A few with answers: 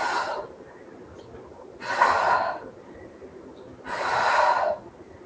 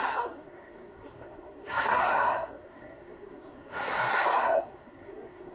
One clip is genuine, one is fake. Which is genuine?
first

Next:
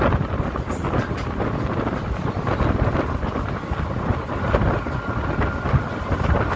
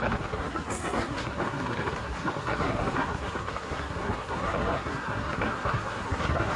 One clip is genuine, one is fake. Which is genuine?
first